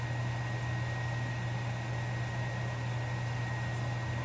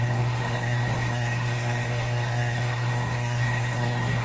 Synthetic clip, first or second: second